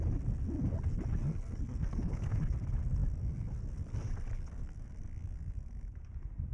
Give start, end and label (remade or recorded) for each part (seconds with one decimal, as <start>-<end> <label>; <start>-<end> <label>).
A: 0.0-1.2 recorded; 1.2-2.4 remade; 2.4-6.5 recorded